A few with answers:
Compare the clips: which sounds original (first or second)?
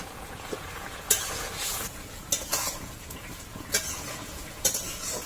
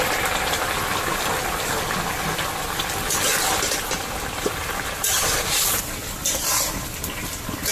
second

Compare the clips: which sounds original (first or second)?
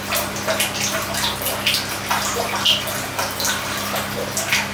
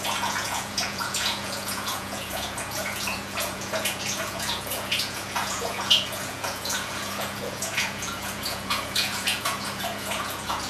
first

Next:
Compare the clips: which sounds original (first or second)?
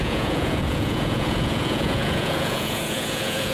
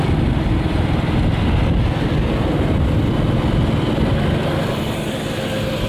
second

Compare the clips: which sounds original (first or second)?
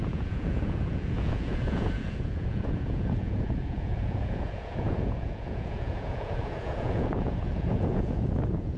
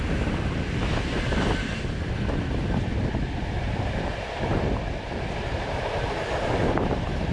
second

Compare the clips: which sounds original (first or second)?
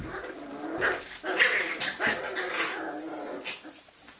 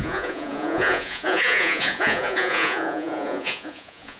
first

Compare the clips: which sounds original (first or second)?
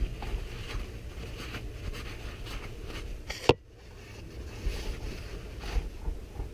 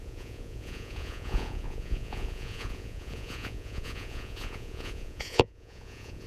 first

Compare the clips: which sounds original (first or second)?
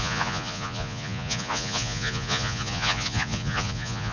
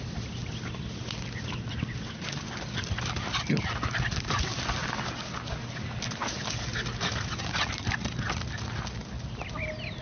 second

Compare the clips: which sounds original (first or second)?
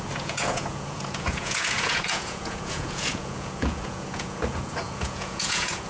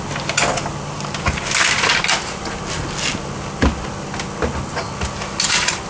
second